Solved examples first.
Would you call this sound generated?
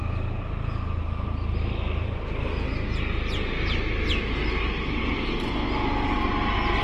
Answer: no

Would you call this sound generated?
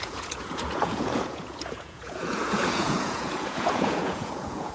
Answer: yes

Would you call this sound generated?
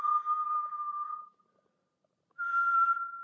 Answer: no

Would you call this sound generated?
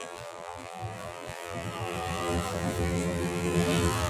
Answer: yes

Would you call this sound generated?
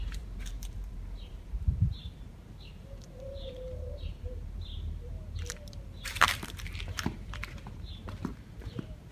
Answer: yes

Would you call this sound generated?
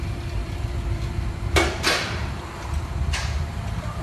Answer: yes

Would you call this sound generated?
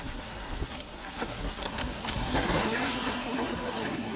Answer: yes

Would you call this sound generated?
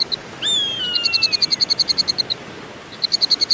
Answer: no